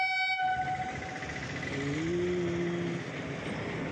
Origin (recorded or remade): recorded